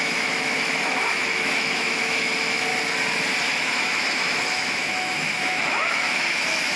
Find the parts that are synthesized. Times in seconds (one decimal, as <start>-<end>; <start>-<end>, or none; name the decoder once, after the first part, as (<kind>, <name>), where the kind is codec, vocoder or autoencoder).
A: 0.0-2.7 (autoencoder, DAC-VAE); 3.5-6.8